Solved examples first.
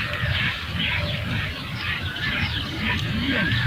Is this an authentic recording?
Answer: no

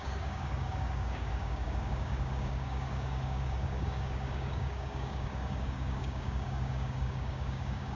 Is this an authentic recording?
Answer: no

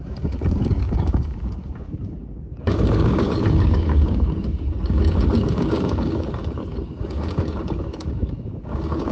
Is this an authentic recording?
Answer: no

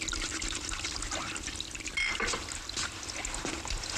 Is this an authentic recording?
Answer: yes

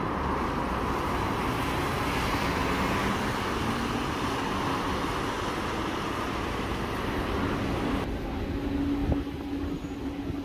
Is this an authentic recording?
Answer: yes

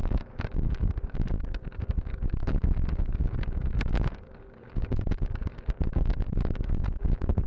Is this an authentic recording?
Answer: no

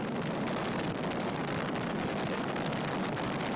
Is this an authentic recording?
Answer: yes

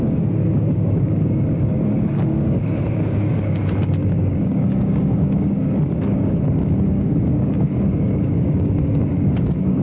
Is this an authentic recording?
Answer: no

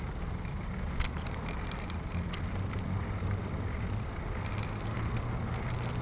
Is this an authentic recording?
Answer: yes